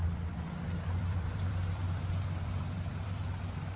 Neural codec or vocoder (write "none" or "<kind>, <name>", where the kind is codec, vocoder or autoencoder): vocoder, BigVGAN v2